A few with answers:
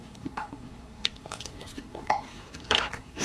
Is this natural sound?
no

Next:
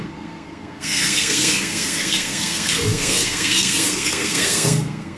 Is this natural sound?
no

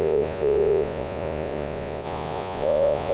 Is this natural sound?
no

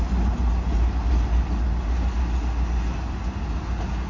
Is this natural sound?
yes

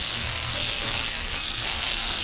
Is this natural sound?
no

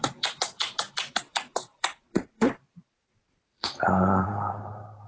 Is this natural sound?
no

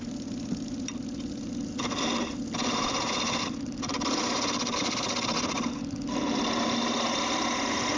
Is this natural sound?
yes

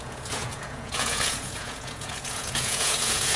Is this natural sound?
no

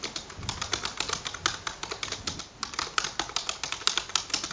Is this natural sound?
yes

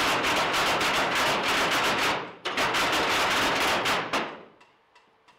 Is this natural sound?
yes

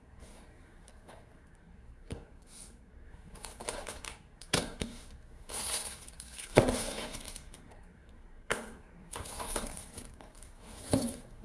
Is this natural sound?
no